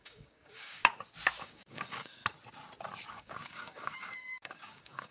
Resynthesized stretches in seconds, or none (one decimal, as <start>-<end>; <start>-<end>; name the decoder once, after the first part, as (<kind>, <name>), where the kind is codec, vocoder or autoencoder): 0.0-0.8 (codec, DAC); 1.4-2.2; 3.1-5.1